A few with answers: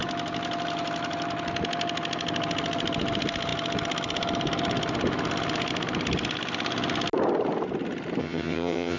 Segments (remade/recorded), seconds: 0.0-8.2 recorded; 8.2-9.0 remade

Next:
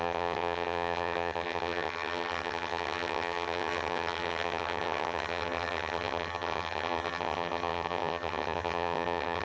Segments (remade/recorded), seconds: 0.0-9.4 remade

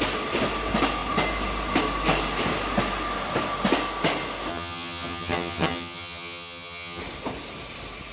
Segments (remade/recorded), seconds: 0.0-4.5 recorded; 4.5-7.0 remade; 7.0-8.1 recorded

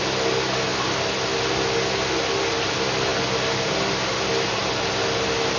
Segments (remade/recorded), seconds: 0.0-5.6 recorded